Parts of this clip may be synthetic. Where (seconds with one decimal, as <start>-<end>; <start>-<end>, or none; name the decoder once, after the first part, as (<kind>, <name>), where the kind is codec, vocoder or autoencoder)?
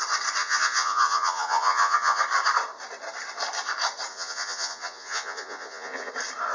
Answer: 0.4-2.2 (vocoder, Vocos); 4.1-6.1